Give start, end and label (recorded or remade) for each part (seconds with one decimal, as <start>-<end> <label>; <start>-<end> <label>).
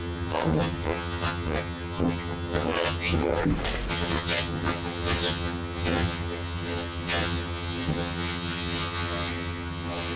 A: 0.0-3.4 remade; 3.4-3.9 recorded; 3.9-10.2 remade